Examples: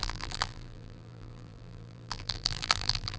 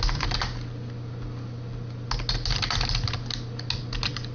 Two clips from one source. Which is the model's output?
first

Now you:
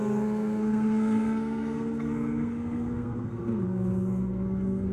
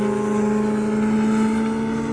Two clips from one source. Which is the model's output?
first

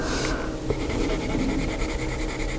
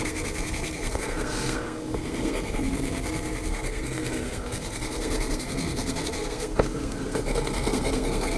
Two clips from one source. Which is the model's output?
second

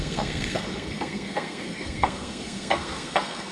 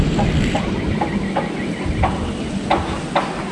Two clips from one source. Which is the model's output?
first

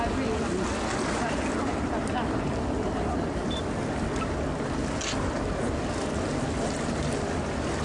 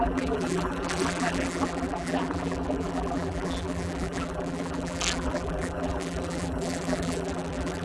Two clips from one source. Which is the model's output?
second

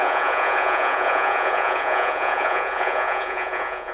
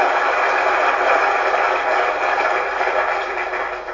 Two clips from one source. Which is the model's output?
first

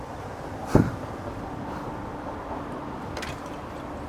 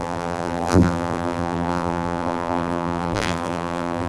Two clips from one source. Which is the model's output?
second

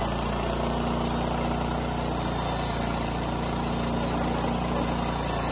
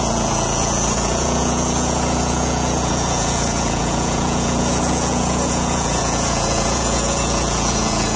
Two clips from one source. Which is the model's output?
second